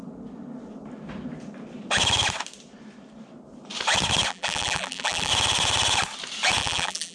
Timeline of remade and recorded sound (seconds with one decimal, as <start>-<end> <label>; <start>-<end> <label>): 0.0-4.3 recorded; 4.3-5.3 remade; 5.3-6.6 recorded; 6.6-7.1 remade